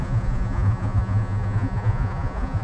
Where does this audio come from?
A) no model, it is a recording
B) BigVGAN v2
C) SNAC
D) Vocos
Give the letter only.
D